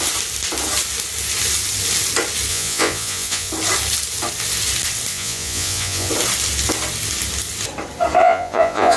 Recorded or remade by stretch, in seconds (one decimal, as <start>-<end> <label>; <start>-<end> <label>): 0.0-2.5 recorded; 2.5-3.5 remade; 3.5-5.1 recorded; 5.1-6.1 remade; 6.1-8.2 recorded; 8.2-9.0 remade